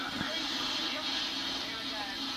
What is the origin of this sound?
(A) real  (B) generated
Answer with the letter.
A